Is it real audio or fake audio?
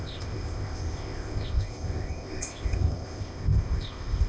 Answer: fake